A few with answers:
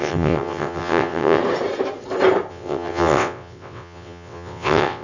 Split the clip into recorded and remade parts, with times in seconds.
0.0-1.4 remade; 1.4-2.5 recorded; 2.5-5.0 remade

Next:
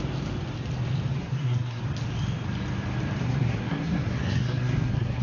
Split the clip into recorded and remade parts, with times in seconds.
0.0-1.2 recorded; 1.2-1.8 remade; 1.8-3.2 recorded; 3.2-5.2 remade

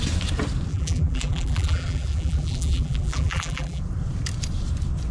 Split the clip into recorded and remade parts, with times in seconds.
0.0-0.7 recorded; 0.7-3.8 remade; 3.8-5.1 recorded